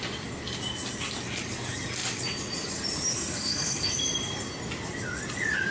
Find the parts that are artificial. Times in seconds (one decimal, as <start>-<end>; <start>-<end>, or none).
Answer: 3.1-4.0